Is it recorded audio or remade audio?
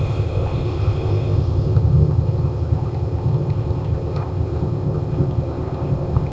remade